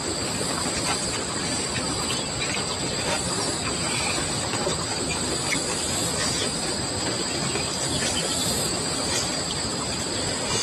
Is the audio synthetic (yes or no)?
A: no